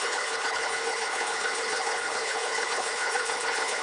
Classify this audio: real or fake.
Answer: fake